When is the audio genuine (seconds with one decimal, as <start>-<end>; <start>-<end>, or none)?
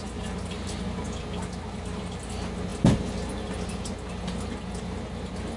0.0-5.6